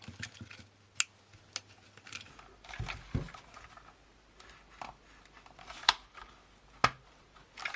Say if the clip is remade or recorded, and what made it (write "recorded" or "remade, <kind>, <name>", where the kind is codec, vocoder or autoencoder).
recorded